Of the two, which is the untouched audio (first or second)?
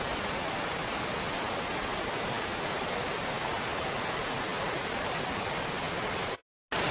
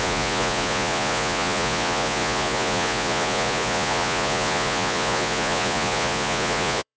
first